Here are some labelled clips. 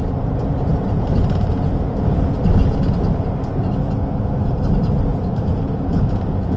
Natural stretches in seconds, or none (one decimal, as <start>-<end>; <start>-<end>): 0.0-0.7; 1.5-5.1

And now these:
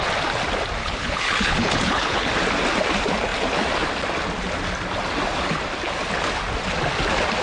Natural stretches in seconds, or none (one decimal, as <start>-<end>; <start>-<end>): 0.0-0.8; 2.3-7.4

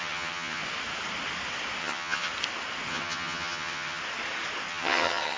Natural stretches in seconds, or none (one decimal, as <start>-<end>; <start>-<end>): 0.6-1.8; 2.3-2.9; 4.0-4.7

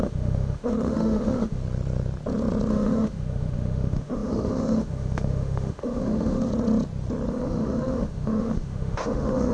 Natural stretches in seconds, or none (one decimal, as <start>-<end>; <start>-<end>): 1.6-2.7; 6.5-7.3